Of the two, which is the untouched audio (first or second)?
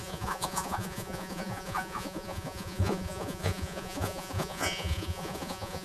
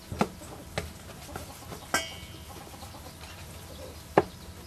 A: second